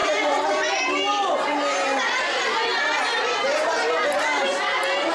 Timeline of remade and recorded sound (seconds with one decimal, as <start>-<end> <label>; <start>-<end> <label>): 0.0-0.5 remade; 0.5-5.1 recorded